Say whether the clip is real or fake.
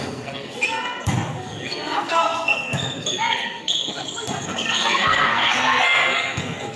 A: fake